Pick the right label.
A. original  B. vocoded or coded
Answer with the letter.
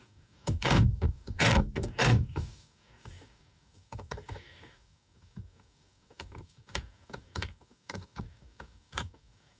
B